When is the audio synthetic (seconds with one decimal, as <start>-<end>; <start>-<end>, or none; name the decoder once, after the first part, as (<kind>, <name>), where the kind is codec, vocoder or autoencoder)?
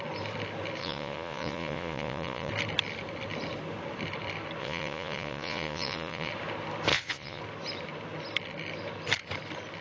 0.8-2.5 (vocoder, Vocos); 4.6-6.3; 6.9-7.4